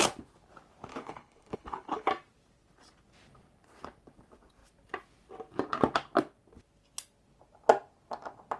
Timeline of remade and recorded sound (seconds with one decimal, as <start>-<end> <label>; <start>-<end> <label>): 0.0-0.9 recorded; 0.9-2.1 remade; 2.1-8.6 recorded